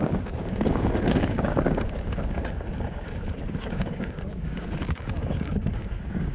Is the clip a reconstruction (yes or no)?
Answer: yes